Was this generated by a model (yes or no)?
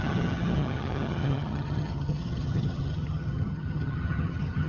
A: yes